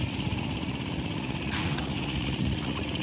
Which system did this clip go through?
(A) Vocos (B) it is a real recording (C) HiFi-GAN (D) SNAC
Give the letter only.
A